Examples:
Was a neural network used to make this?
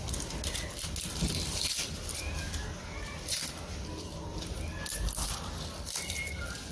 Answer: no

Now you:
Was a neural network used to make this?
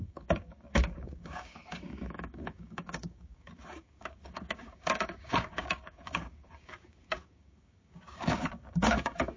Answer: yes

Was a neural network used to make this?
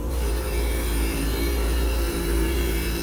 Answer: yes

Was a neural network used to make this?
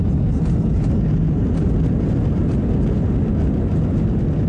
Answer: no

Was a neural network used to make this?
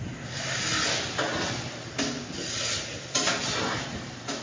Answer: no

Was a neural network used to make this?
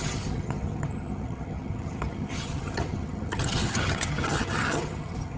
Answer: yes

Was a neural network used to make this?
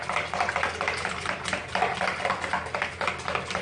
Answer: no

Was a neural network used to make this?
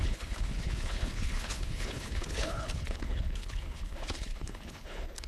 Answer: yes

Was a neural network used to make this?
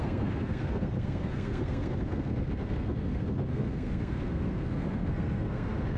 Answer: yes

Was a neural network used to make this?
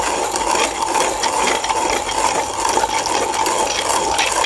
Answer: no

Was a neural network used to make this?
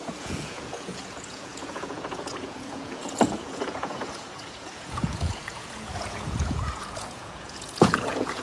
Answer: yes